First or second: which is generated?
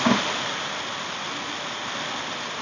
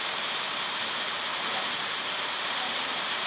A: second